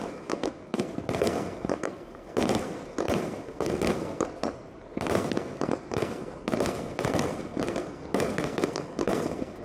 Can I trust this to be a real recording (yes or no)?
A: no